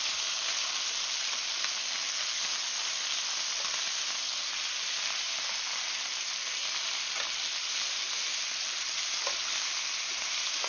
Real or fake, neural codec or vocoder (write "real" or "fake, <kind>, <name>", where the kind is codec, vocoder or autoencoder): real